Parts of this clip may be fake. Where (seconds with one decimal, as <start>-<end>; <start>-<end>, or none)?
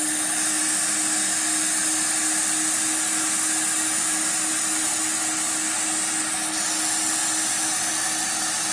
none